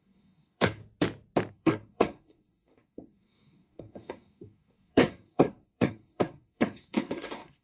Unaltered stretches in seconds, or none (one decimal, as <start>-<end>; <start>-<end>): 0.8-1.5